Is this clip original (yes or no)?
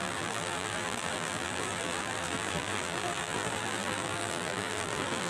no